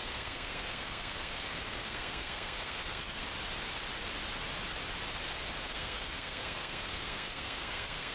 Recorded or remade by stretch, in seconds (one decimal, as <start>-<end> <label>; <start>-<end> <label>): 0.0-3.2 remade; 3.2-5.6 recorded; 5.6-8.1 remade